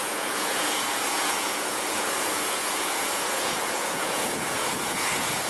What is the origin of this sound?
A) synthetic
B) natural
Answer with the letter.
A